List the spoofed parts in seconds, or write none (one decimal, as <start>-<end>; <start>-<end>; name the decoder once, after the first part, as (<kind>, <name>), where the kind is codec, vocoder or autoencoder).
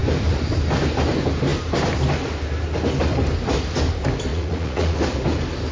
4.3-5.0 (vocoder, Vocos)